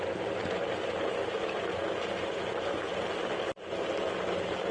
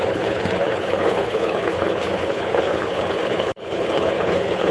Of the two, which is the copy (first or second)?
second